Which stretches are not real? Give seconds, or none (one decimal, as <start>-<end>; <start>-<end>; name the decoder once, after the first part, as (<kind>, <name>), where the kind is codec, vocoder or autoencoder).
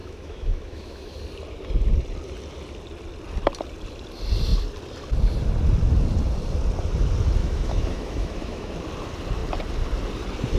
0.0-1.2 (autoencoder, DAC-VAE); 7.4-8.7